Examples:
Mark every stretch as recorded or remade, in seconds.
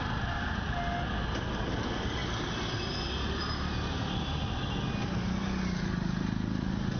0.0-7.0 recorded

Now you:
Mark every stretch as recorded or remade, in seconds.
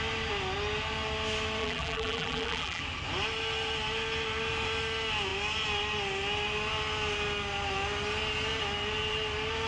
0.0-1.6 recorded; 1.6-2.8 remade; 2.8-9.7 recorded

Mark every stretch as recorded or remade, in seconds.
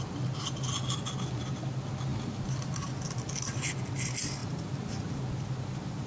0.0-6.1 recorded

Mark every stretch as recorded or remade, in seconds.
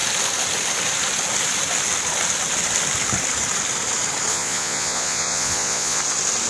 0.0-4.3 recorded; 4.3-6.0 remade; 6.0-6.5 recorded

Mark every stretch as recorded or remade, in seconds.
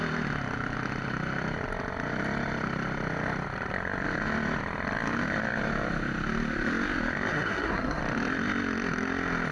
0.0-7.3 recorded; 7.3-8.0 remade; 8.0-9.5 recorded